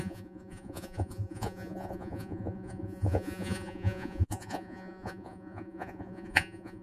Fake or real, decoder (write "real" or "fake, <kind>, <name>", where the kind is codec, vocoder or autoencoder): fake, vocoder, Vocos